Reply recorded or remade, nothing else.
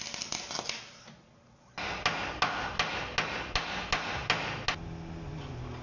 recorded